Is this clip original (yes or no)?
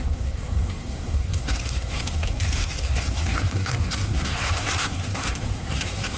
no